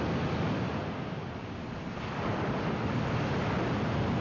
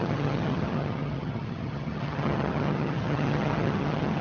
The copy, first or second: second